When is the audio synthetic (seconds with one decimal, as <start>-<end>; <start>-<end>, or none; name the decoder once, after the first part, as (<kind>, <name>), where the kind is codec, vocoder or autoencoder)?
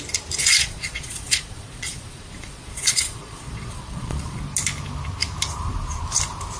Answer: 0.4-4.4 (vocoder, Vocos)